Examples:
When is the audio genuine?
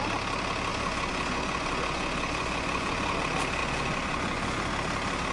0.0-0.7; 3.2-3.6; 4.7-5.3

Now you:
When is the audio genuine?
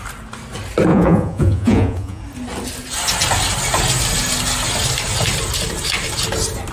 0.0-0.9; 2.2-6.7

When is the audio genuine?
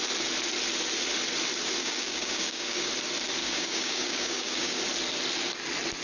0.0-1.8; 2.9-3.4; 4.8-6.0